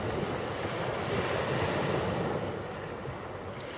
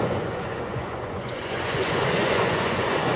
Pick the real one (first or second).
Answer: first